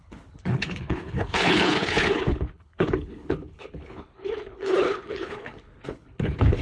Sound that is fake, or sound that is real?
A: fake